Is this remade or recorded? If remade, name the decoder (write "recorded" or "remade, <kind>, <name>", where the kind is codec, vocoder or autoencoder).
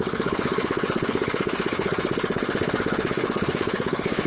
remade, codec, HILCodec